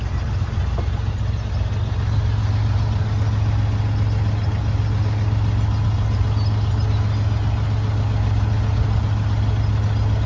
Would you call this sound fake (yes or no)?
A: no